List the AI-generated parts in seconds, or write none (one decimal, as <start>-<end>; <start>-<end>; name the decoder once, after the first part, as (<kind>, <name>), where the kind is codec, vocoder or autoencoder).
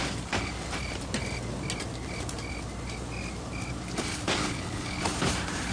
4.4-5.0 (codec, HILCodec)